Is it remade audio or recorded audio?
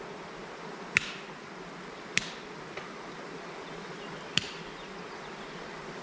recorded